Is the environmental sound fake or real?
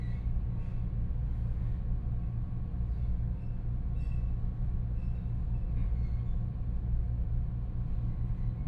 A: real